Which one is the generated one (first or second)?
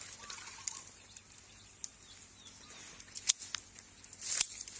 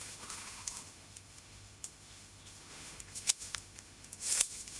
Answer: second